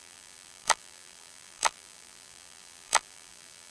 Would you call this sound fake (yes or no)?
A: yes